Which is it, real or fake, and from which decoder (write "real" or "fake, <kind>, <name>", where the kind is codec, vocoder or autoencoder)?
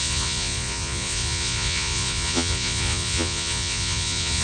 fake, vocoder, Vocos